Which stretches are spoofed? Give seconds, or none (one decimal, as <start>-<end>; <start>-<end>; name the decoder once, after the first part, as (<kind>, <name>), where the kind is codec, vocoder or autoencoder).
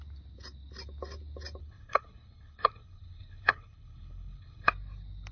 1.6-4.7 (codec, HILCodec)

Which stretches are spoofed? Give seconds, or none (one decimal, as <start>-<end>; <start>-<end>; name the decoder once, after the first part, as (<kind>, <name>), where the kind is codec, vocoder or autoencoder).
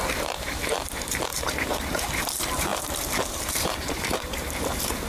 0.0-5.1 (vocoder, BigVGAN v2)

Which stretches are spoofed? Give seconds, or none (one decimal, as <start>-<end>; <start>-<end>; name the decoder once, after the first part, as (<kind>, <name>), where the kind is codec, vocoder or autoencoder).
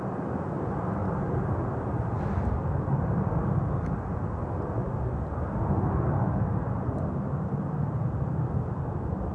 none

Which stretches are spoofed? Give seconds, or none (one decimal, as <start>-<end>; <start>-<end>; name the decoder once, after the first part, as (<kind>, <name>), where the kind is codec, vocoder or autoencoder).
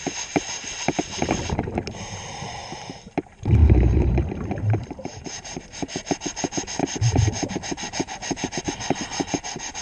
3.6-5.6 (vocoder, BigVGAN v2)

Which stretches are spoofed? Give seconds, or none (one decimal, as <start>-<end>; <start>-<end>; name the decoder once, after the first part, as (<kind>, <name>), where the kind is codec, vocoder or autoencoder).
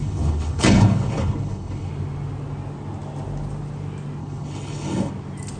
0.0-1.9 (codec, HILCodec); 4.2-5.1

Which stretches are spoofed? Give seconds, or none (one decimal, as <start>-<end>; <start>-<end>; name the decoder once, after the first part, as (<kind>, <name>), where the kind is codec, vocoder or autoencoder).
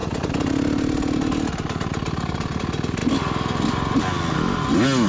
none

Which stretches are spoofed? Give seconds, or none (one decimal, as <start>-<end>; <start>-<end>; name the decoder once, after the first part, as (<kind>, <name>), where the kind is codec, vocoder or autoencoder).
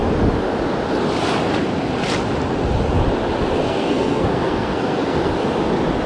3.6-5.3 (codec, SNAC)